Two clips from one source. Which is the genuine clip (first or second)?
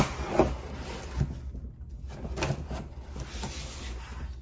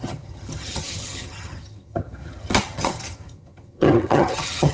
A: first